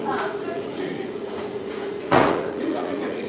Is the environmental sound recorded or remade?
remade